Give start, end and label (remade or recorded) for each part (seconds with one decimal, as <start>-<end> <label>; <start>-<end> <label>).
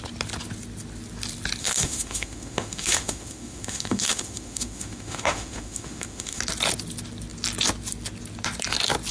0.0-1.6 recorded; 1.6-6.4 remade; 6.4-9.1 recorded